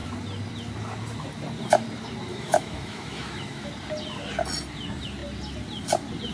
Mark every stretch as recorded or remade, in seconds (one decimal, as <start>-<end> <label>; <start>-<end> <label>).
0.0-2.3 recorded; 2.3-3.7 remade; 3.7-6.3 recorded